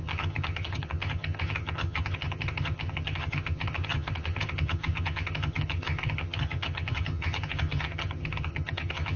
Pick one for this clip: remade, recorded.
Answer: remade